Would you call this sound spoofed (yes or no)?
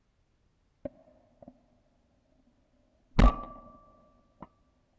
no